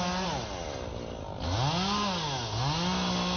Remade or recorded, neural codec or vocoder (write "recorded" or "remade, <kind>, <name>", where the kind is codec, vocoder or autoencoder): recorded